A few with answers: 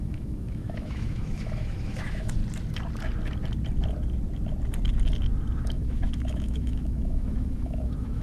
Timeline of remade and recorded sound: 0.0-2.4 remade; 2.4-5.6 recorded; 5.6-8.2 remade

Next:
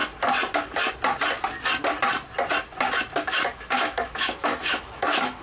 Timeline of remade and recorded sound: 0.0-3.2 recorded; 3.2-5.4 remade

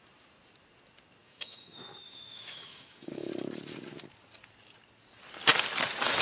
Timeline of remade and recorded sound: 0.0-1.2 recorded; 1.2-3.3 remade; 3.3-6.2 recorded

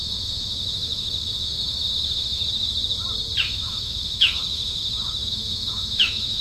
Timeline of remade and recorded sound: 0.0-2.4 remade; 2.4-3.4 recorded; 3.4-6.4 remade

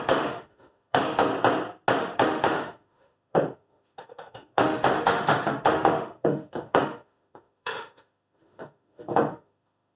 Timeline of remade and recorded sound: 0.0-1.3 remade; 1.3-2.0 recorded; 2.0-10.0 remade

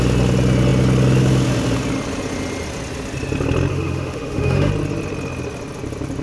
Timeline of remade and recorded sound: 0.0-3.7 recorded; 3.7-4.7 remade; 4.7-6.2 recorded

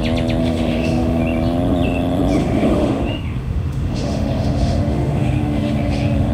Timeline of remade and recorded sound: 0.0-0.4 recorded; 0.4-1.2 remade; 1.2-2.4 recorded; 2.4-6.3 remade

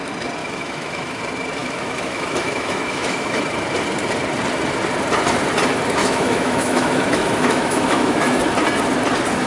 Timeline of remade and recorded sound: 0.0-0.4 recorded; 0.4-1.2 remade; 1.2-1.6 recorded; 1.6-3.4 remade; 3.4-6.0 recorded; 6.0-8.4 remade; 8.4-9.5 recorded